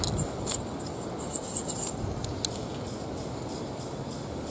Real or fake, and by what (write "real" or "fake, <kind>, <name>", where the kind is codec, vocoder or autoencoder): real